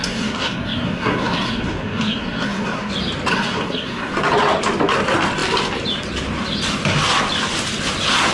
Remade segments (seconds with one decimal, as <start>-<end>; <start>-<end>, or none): 0.0-2.9; 3.3-4.1